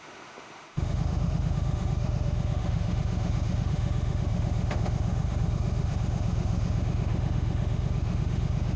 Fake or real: fake